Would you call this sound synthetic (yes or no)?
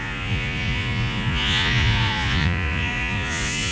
yes